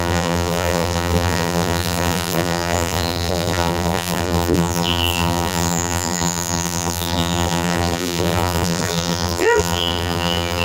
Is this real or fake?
fake